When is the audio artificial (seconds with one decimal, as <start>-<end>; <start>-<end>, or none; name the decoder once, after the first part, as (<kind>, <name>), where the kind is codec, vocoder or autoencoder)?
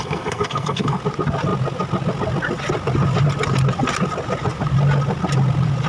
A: 0.0-1.0 (codec, SNAC)